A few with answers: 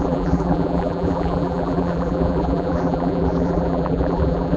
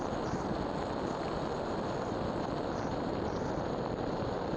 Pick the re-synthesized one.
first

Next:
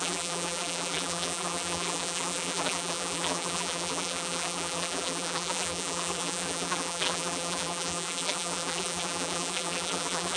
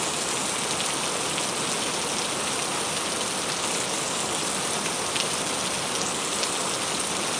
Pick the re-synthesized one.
first